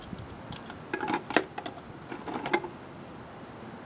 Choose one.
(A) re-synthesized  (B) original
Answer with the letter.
B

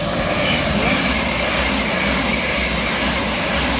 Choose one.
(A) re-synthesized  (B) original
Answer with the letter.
B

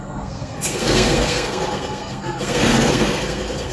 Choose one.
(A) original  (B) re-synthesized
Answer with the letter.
B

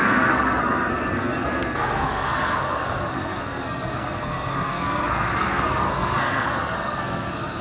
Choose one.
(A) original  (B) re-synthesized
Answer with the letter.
B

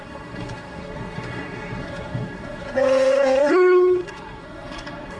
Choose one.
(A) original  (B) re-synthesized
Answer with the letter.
B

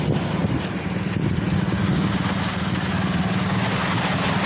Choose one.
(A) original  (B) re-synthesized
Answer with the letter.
A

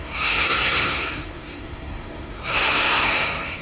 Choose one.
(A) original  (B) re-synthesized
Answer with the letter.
B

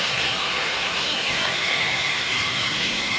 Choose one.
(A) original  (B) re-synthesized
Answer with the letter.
B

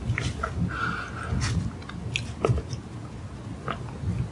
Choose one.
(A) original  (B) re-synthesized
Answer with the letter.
A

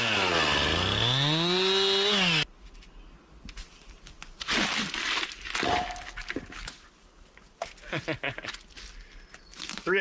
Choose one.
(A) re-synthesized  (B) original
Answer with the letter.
B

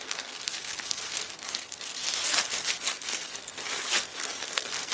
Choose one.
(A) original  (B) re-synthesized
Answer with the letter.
B